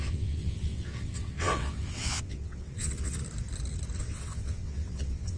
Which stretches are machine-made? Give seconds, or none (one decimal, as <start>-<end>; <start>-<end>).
0.0-3.2; 4.0-5.4